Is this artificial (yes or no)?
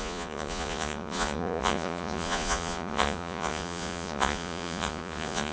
yes